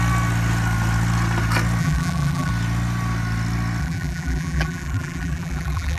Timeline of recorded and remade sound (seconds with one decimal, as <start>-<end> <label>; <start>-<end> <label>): 0.0-1.8 recorded; 1.8-2.5 remade; 2.5-3.8 recorded; 3.8-6.0 remade

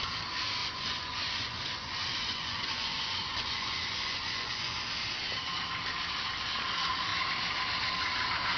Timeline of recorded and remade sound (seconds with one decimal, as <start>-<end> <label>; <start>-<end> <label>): 0.0-0.6 recorded; 0.6-4.8 remade; 4.8-8.6 recorded

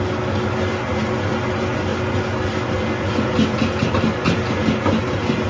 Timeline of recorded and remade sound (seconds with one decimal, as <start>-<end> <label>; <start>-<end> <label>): 0.0-5.5 recorded